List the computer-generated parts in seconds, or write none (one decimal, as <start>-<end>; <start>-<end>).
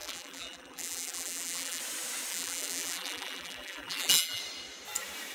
0.0-1.8; 2.3-4.4